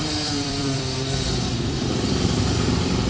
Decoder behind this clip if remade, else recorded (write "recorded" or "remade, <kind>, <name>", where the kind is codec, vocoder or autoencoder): remade, vocoder, BigVGAN v2